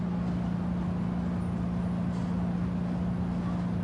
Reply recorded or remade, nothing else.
recorded